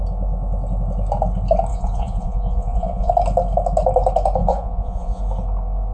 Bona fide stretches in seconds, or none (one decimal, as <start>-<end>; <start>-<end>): 0.0-1.7; 3.1-4.4; 5.2-5.9